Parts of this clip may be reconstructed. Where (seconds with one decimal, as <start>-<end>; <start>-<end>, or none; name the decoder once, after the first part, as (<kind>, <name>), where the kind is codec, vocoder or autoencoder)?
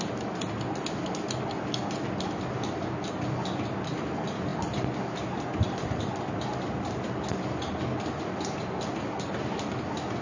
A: none